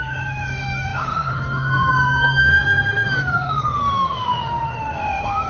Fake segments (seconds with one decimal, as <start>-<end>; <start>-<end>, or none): 0.0-5.5